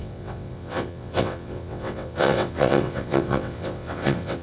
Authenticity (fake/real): fake